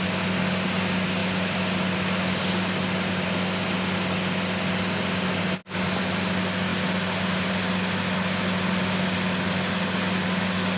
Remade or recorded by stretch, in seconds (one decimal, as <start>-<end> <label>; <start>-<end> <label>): 0.0-10.8 recorded